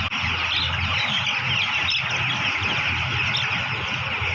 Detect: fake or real real